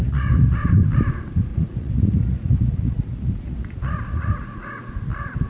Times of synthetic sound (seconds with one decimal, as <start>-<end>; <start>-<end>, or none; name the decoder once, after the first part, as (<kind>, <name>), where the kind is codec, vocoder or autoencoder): 0.0-0.8 (vocoder, Vocos); 1.5-4.8